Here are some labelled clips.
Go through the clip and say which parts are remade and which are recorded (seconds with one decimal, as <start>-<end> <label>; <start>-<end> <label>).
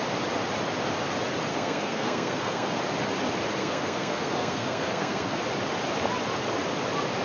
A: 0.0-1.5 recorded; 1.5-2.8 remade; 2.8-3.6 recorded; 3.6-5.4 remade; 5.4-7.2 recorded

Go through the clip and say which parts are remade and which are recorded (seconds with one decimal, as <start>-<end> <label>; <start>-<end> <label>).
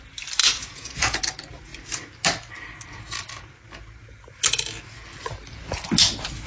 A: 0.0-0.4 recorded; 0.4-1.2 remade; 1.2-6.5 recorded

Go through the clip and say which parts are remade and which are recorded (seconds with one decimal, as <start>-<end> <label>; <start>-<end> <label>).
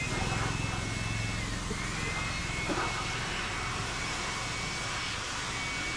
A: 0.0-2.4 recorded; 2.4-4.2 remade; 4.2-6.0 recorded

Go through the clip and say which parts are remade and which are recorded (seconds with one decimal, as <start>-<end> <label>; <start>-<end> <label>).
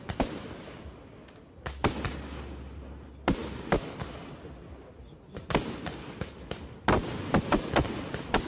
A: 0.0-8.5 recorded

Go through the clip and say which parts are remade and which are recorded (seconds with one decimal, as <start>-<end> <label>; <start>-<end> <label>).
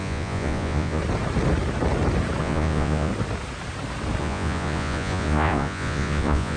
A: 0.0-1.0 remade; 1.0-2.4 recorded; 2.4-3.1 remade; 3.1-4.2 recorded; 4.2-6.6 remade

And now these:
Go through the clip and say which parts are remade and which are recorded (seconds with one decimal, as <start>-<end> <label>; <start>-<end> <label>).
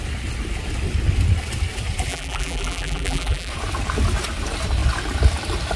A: 0.0-2.1 recorded; 2.1-3.5 remade; 3.5-5.8 recorded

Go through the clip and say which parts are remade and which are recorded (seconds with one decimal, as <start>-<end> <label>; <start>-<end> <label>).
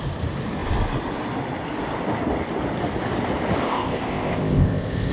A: 0.0-3.6 recorded; 3.6-5.1 remade